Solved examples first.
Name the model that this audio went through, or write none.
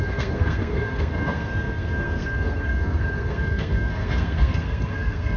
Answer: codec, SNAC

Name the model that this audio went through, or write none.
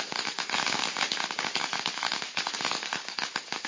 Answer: codec, DAC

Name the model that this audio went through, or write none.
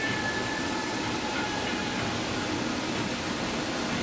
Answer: none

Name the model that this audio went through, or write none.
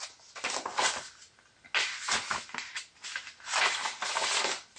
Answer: none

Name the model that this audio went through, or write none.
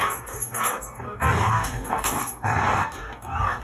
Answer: codec, DAC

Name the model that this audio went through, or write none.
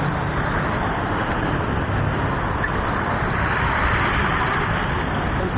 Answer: vocoder, BigVGAN v2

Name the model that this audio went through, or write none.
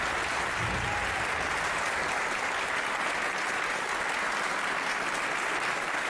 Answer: none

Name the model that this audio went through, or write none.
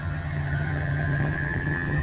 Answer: vocoder, HiFi-GAN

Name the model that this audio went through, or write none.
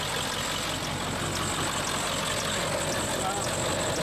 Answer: none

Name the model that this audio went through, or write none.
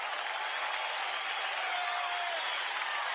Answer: none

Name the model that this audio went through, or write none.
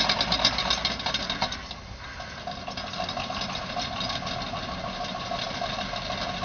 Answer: none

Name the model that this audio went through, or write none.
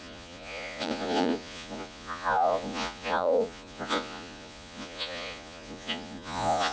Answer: vocoder, Vocos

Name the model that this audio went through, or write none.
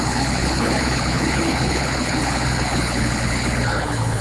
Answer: codec, HILCodec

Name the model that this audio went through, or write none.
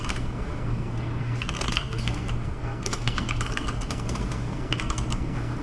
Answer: codec, SNAC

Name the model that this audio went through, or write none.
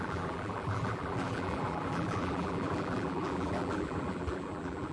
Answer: vocoder, BigVGAN v2